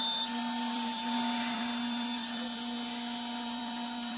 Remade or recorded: remade